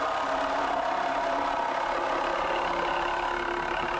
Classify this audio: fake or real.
real